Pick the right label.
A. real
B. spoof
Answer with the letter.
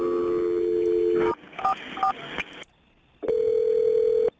A